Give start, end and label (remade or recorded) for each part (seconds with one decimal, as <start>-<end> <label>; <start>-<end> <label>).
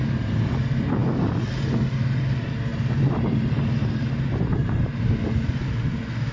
0.0-2.7 recorded; 2.7-5.2 remade; 5.2-6.3 recorded